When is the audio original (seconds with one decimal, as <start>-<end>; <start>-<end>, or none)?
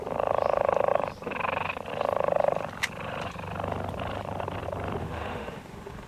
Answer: 0.0-5.0